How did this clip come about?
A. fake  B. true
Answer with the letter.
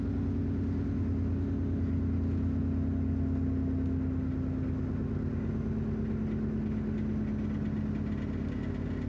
B